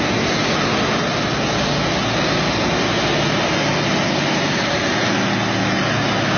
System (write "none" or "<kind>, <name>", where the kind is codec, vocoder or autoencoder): none